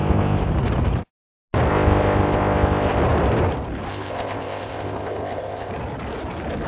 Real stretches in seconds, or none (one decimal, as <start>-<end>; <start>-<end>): 0.5-1.7; 3.0-3.9; 5.7-6.7